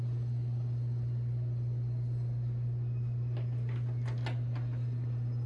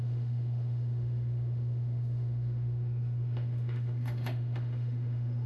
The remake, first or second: second